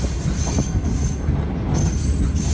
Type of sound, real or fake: real